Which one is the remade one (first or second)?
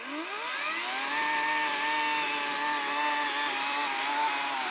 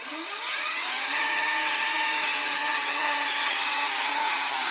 second